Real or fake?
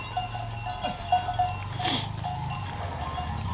real